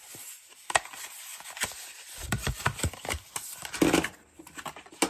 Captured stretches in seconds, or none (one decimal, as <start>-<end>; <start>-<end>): 0.0-1.3; 4.4-5.1